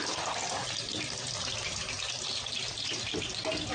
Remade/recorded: recorded